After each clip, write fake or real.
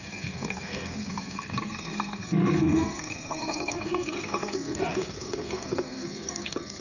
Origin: fake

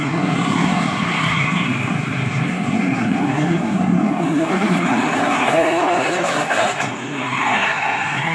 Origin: fake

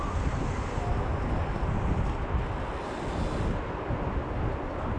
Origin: real